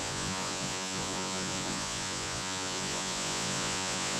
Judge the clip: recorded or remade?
remade